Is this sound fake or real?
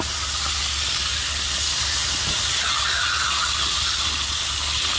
real